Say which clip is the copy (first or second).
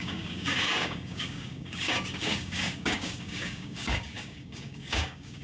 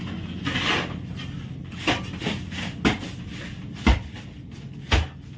first